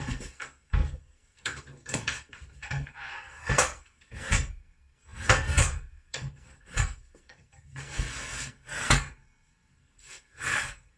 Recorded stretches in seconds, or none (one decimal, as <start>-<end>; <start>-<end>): none

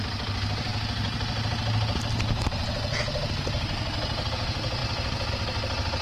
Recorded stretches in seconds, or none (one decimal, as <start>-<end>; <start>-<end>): 0.0-6.0

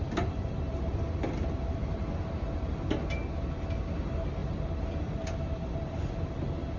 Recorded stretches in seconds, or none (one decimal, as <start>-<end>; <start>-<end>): 0.0-6.8

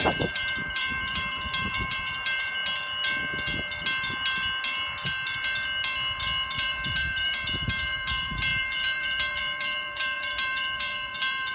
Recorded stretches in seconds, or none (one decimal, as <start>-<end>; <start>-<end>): 2.6-6.5

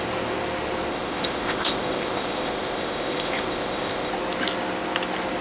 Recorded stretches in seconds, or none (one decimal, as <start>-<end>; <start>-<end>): 0.0-0.9; 4.1-5.4